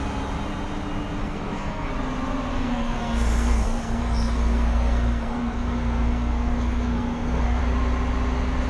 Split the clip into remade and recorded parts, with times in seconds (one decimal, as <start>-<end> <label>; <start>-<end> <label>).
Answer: 0.0-1.2 recorded; 1.2-1.9 remade; 1.9-2.5 recorded; 2.5-7.6 remade; 7.6-8.7 recorded